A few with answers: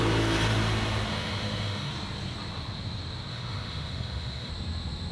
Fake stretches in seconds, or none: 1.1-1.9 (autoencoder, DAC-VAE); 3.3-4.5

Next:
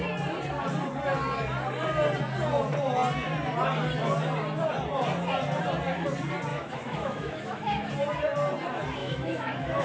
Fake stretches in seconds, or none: 6.5-7.9 (autoencoder, DAC-VAE); 9.0-9.8

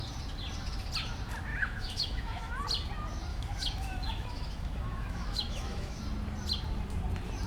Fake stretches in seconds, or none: 1.5-2.5 (autoencoder, DAC-VAE); 3.3-6.0

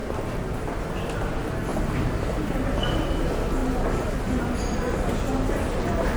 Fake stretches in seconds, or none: none

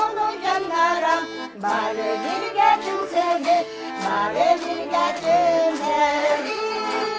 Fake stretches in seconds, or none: 3.0-3.9 (autoencoder, DAC-VAE); 6.0-6.6

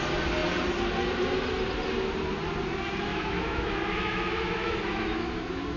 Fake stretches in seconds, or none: 3.1-5.8 (autoencoder, DAC-VAE)

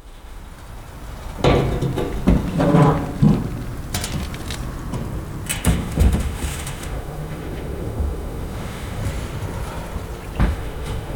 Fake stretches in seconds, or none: 0.0-0.4 (autoencoder, DAC-VAE); 5.6-9.0; 10.4-11.2

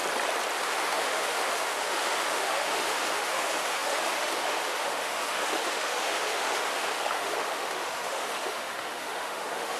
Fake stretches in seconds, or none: 0.6-9.8 (autoencoder, DAC-VAE)